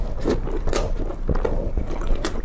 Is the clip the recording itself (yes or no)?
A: yes